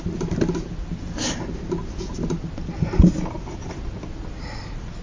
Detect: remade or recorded recorded